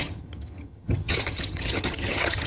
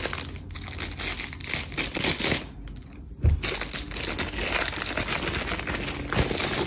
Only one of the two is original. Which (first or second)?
second